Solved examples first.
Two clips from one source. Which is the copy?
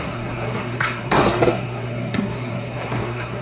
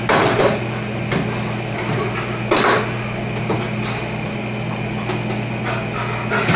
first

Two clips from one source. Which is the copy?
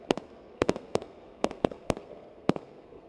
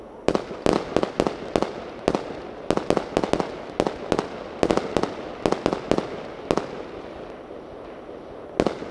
first